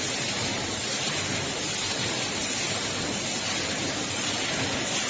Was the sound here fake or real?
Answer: real